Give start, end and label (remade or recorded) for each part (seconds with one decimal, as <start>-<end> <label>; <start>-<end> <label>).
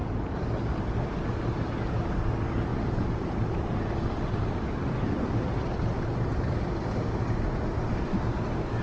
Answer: 0.0-0.8 remade; 0.8-2.7 recorded; 2.7-7.0 remade; 7.0-8.8 recorded